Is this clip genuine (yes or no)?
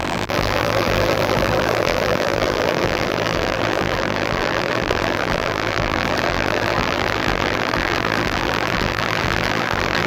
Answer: no